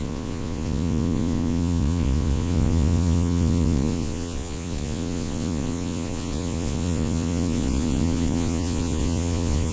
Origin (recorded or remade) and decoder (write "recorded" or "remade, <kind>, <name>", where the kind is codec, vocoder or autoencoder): remade, vocoder, Vocos